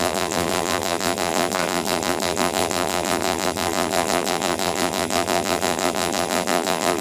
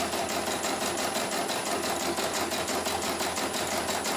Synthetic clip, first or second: first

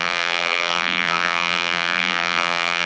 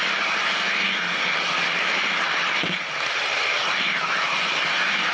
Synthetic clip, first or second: first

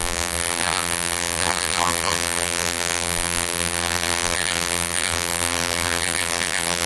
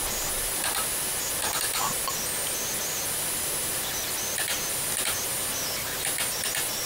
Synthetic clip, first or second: first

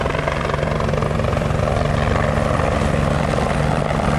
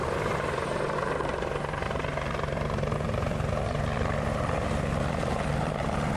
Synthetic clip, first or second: second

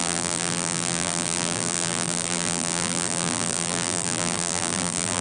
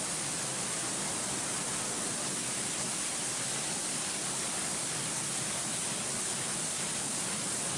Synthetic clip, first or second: first